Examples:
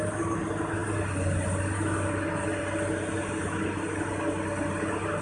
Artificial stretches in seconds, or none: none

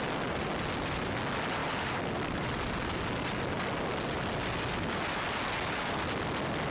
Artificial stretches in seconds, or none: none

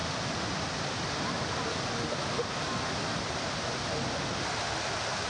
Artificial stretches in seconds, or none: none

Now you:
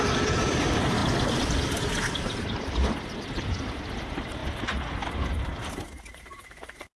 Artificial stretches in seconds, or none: 0.0-4.4 (vocoder, BigVGAN v2); 5.3-7.0

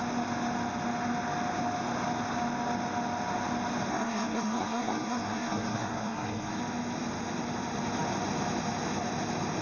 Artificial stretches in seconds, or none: 3.9-6.6 (codec, SNAC)

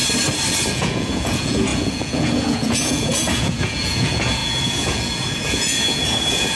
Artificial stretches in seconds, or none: 0.7-6.6 (vocoder, Vocos)

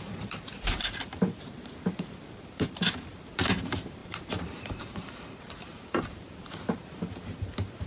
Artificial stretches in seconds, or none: 0.0-7.9 (vocoder, BigVGAN v2)